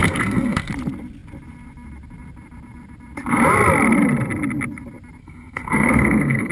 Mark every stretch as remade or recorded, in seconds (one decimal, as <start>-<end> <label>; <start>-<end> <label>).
0.0-0.7 remade; 0.7-5.2 recorded; 5.2-6.5 remade